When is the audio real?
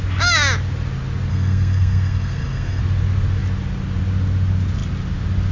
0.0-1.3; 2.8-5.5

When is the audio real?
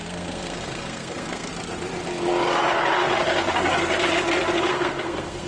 1.5-4.6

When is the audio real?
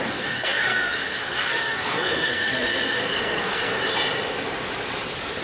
3.7-5.4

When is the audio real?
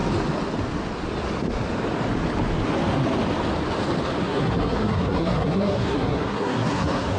0.0-4.2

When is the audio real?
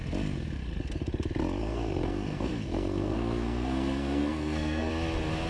0.0-1.6; 4.9-5.5